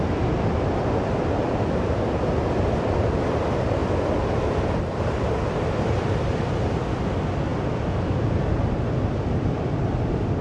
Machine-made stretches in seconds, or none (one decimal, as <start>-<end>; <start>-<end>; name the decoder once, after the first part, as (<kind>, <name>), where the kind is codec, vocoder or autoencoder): none